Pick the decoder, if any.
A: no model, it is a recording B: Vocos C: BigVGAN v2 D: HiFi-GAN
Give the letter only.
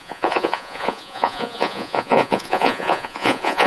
B